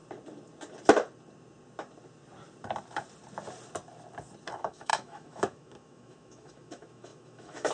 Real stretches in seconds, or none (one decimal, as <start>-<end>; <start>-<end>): 0.0-4.5